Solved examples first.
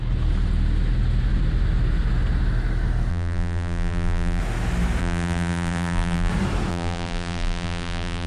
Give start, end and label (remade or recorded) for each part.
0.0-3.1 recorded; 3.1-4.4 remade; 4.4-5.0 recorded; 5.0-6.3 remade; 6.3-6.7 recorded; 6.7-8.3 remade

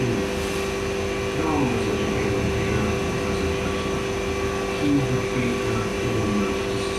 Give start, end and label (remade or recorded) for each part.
0.0-5.9 recorded; 5.9-6.6 remade; 6.6-7.0 recorded